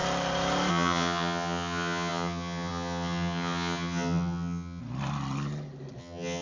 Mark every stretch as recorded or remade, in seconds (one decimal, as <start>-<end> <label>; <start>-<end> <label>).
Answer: 0.0-0.7 recorded; 0.7-4.8 remade; 4.8-6.0 recorded; 6.0-6.4 remade